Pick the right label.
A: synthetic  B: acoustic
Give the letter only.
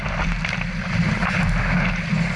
B